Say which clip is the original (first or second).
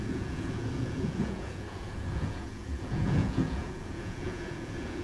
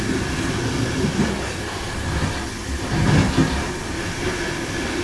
second